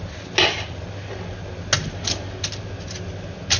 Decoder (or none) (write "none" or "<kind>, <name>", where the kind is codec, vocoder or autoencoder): none